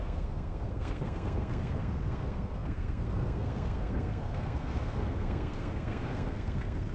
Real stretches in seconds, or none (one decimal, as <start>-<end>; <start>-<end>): none